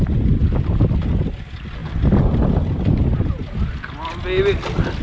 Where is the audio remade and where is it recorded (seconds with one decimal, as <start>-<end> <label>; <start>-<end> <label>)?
0.0-5.0 recorded